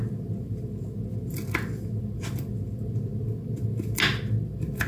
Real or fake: real